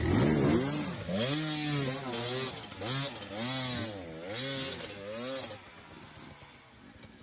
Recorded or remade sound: recorded